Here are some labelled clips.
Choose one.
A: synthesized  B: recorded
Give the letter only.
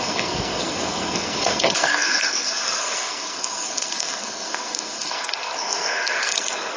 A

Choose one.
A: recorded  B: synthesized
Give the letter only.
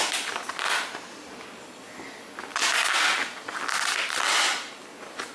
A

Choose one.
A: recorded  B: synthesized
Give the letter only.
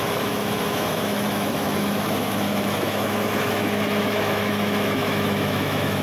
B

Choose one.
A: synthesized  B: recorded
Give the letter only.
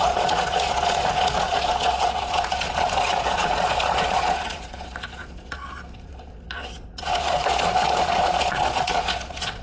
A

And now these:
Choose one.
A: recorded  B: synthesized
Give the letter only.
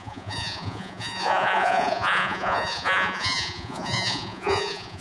B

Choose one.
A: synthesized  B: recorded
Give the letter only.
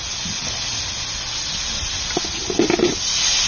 B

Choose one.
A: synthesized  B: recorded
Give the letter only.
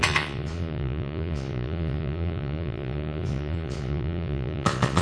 A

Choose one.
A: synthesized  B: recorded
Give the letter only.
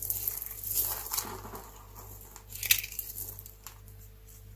B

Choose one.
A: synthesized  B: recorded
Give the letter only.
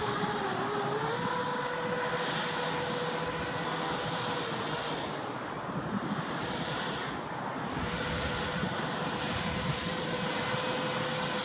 B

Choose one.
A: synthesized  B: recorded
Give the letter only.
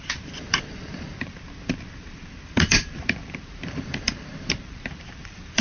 A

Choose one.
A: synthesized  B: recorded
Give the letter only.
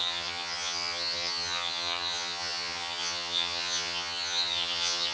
A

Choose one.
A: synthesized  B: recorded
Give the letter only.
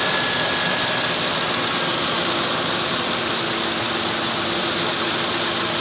B